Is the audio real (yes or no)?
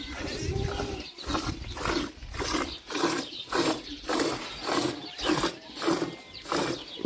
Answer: yes